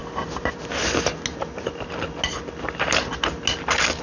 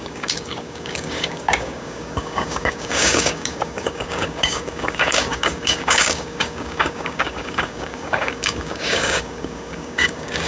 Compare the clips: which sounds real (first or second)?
first